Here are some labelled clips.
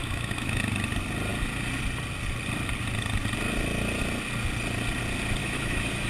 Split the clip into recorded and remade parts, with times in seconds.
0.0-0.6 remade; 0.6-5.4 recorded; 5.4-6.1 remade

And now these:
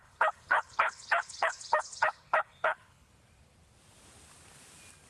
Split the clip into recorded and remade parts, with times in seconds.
0.0-3.1 remade; 3.1-5.1 recorded

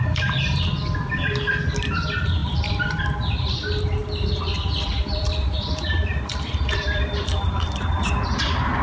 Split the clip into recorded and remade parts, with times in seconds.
0.0-8.8 remade

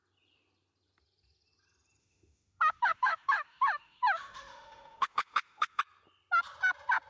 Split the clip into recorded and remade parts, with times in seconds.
0.0-2.0 recorded; 2.0-5.8 remade; 5.8-7.1 recorded

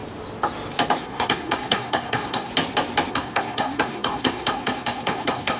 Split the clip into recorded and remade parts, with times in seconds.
0.0-1.0 recorded; 1.0-2.5 remade; 2.5-3.1 recorded; 3.1-5.6 remade

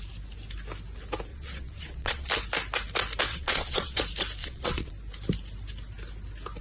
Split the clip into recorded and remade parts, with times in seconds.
0.0-1.3 recorded; 1.3-2.3 remade; 2.3-3.3 recorded; 3.3-4.0 remade; 4.0-4.4 recorded; 4.4-4.9 remade; 4.9-6.6 recorded